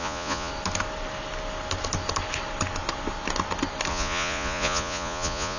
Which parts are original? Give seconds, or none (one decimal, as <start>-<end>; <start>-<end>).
0.5-3.9